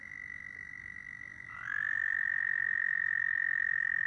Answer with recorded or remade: remade